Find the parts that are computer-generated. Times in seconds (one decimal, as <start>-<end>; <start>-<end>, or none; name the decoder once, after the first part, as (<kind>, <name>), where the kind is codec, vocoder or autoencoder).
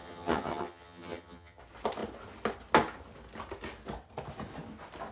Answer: 0.0-1.6 (vocoder, HiFi-GAN)